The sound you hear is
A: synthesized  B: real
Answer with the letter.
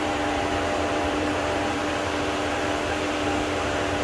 A